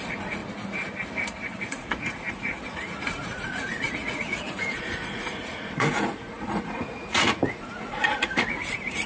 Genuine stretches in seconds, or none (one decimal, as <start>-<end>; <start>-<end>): 0.4-1.6